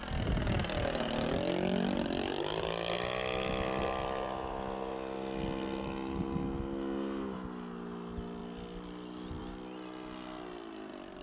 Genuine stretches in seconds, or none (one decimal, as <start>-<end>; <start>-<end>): 0.0-11.2